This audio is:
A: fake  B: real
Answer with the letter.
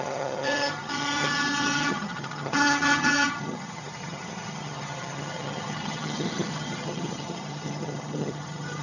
A